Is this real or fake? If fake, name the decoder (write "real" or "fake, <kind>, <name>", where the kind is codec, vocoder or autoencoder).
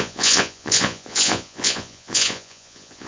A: fake, vocoder, Vocos